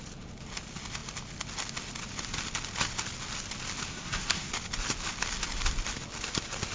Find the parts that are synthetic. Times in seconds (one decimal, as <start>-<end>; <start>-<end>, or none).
3.9-4.5